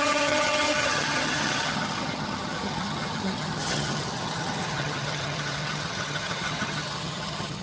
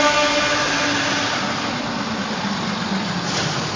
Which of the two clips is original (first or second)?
second